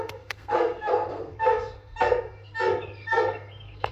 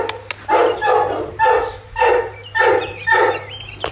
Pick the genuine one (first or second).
second